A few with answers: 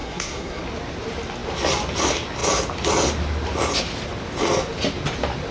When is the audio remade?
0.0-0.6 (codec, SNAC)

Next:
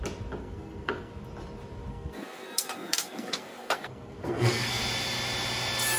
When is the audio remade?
0.4-1.1 (codec, SNAC); 1.9-4.8

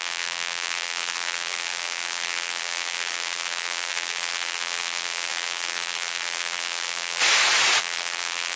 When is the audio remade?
0.0-7.2 (vocoder, BigVGAN v2); 7.8-8.6

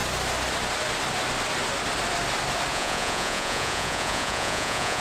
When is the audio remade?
2.7-5.0 (vocoder, Vocos)

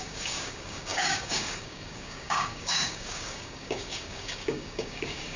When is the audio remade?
0.0-5.4 (codec, DAC)

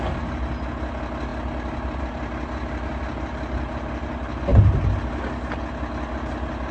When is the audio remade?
none